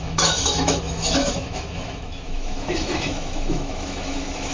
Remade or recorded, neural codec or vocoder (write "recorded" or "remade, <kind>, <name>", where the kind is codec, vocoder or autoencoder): remade, autoencoder, DAC-VAE